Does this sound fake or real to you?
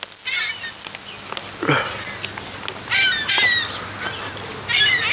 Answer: real